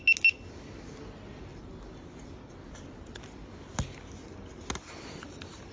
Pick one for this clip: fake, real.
real